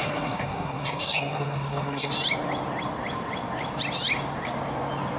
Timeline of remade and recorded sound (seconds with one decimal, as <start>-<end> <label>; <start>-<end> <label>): 0.0-2.1 remade; 2.1-5.2 recorded